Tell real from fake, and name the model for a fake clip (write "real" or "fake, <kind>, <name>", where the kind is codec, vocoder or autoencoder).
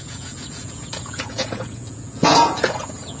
fake, vocoder, Vocos